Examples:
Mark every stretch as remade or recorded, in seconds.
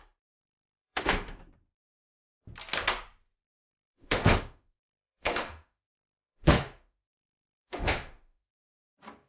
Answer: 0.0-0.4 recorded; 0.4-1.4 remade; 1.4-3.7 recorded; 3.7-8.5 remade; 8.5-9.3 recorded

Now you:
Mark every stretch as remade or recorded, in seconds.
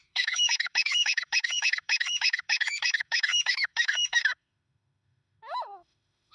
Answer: 0.0-6.3 remade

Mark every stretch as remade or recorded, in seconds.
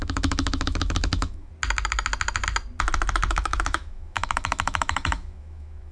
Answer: 0.0-1.5 remade; 1.5-3.3 recorded; 3.3-5.9 remade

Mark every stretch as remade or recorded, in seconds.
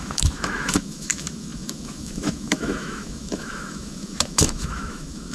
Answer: 0.0-5.3 remade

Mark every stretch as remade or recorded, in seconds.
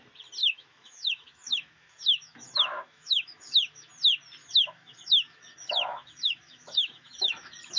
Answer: 0.0-0.4 recorded; 0.4-3.9 remade; 3.9-4.4 recorded; 4.4-7.8 remade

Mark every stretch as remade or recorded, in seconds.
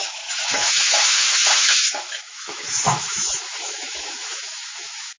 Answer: 0.0-5.2 remade